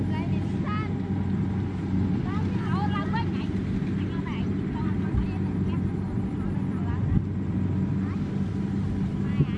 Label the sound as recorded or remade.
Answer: recorded